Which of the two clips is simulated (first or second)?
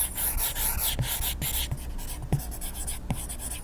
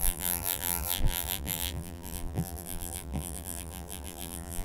second